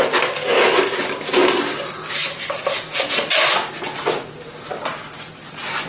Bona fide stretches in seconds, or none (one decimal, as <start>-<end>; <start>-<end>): 0.0-5.9